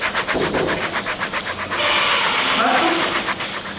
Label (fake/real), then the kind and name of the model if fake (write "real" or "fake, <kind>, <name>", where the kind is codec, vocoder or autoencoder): real